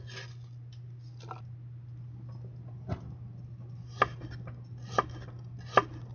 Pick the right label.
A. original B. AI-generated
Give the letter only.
A